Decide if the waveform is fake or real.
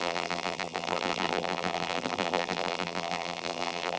fake